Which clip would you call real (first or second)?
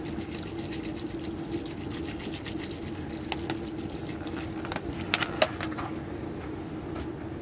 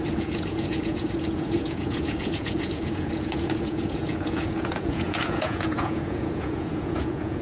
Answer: first